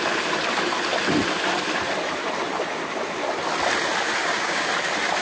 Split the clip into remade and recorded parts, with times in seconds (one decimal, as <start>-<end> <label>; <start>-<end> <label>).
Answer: 0.0-4.2 recorded; 4.2-4.7 remade; 4.7-5.2 recorded